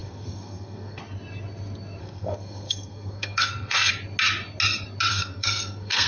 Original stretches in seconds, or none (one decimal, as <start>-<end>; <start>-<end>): 1.0-2.0; 3.9-5.1